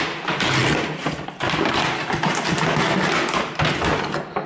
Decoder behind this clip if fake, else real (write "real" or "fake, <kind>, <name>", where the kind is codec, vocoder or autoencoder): real